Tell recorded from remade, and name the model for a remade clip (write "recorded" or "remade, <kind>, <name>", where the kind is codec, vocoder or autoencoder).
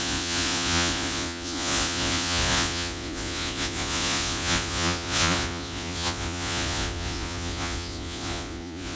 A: remade, vocoder, Vocos